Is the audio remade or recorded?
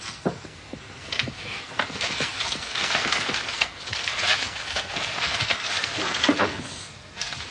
remade